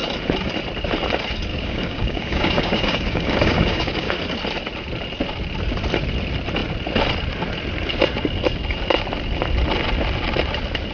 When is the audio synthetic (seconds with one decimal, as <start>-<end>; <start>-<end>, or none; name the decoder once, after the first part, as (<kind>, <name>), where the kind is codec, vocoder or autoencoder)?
1.5-4.1 (codec, DAC)